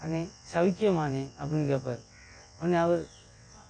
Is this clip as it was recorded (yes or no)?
no